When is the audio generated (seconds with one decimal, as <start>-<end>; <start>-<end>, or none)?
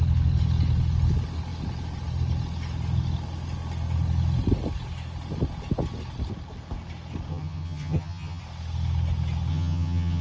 7.3-8.4; 9.5-10.2